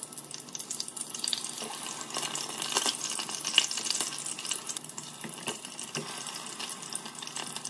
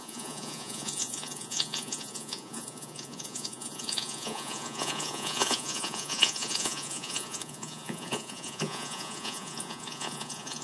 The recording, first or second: first